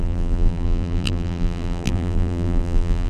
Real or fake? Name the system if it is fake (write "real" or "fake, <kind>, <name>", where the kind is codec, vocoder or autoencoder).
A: fake, vocoder, BigVGAN v2